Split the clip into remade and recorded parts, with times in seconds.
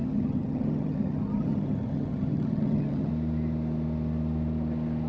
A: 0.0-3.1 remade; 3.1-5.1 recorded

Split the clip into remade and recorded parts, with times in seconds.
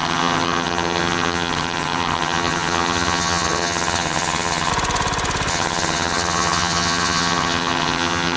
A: 0.0-4.7 remade; 4.7-5.5 recorded; 5.5-8.4 remade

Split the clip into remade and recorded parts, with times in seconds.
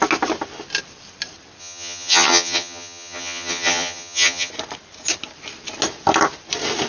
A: 0.0-1.6 recorded; 1.6-4.5 remade; 4.5-6.9 recorded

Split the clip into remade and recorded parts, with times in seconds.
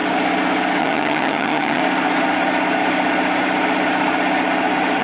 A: 0.0-0.8 recorded; 0.8-1.8 remade; 1.8-5.0 recorded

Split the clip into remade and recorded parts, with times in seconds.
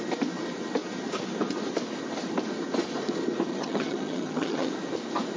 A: 0.0-3.5 recorded; 3.5-4.7 remade; 4.7-5.4 recorded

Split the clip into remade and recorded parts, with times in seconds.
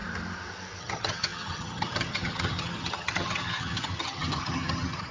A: 0.0-0.8 recorded; 0.8-5.1 remade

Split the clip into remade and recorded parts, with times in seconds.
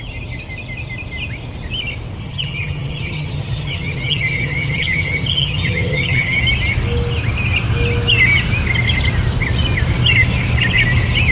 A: 0.0-2.2 recorded; 2.2-6.4 remade; 6.4-11.3 recorded